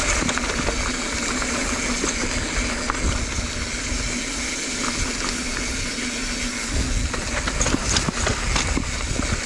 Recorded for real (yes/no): yes